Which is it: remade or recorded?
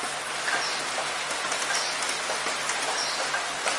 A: recorded